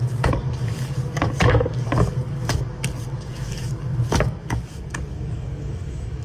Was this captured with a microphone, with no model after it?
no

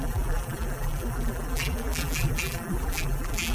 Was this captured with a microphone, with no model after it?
no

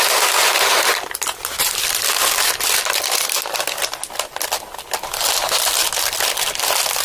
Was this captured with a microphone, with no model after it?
yes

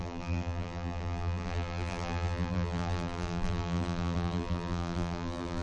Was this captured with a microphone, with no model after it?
no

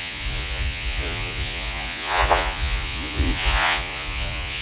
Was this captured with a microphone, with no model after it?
no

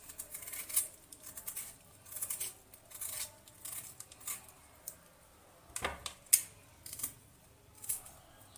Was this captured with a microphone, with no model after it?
yes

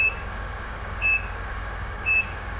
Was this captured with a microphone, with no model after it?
no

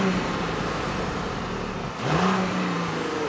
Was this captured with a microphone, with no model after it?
no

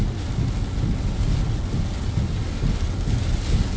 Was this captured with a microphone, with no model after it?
yes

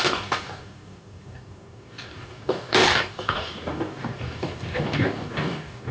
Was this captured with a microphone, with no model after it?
no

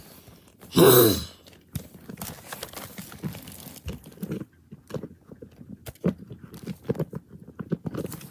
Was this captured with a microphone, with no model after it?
yes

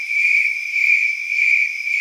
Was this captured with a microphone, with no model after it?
no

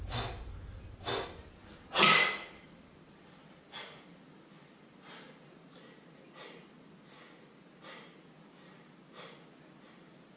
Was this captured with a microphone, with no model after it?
yes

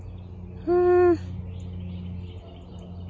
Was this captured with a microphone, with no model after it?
yes